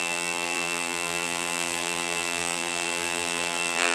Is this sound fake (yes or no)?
yes